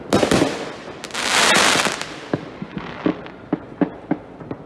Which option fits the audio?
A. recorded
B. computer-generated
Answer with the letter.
A